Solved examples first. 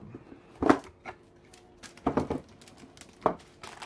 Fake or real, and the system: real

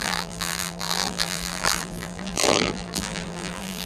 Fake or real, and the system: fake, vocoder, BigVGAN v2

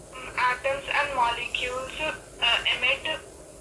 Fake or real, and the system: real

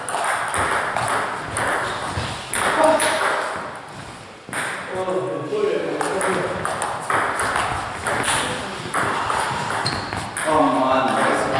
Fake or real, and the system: real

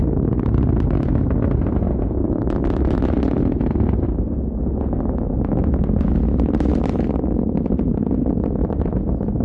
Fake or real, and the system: real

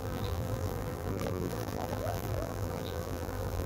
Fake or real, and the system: fake, vocoder, BigVGAN v2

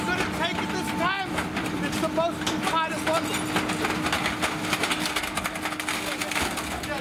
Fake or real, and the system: real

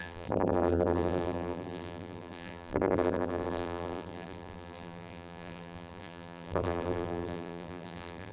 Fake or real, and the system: fake, vocoder, BigVGAN v2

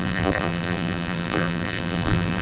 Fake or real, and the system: fake, vocoder, BigVGAN v2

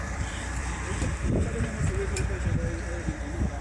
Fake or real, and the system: fake, vocoder, BigVGAN v2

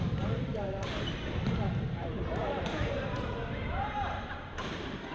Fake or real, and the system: fake, vocoder, BigVGAN v2